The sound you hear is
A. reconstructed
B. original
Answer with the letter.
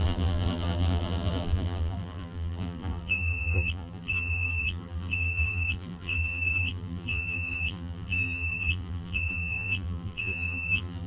A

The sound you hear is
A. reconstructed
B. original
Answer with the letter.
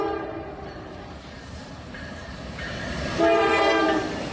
A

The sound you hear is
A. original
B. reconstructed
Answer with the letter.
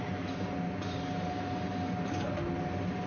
A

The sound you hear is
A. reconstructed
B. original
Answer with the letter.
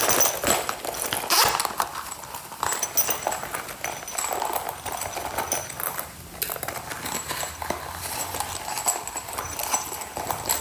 B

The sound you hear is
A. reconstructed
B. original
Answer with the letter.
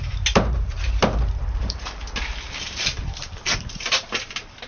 A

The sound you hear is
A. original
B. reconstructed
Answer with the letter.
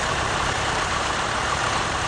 B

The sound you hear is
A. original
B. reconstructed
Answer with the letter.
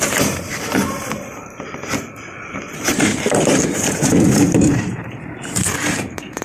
B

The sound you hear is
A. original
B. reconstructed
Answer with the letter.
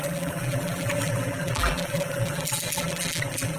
B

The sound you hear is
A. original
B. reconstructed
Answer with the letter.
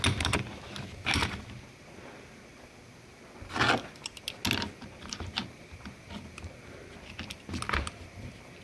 A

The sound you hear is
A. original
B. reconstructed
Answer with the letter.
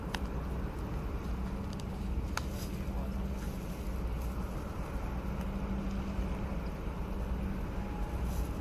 A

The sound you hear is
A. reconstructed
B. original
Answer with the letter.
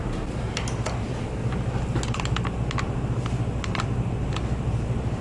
B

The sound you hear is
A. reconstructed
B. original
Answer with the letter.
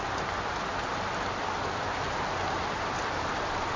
B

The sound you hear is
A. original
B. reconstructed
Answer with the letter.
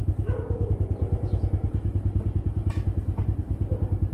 A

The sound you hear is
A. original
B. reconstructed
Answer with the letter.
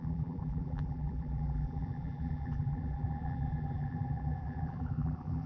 B